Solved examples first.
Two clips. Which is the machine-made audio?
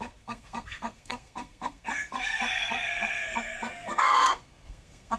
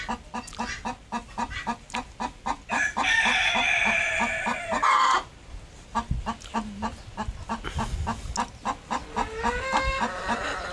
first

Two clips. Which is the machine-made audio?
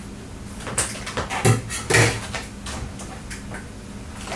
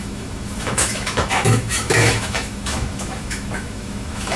second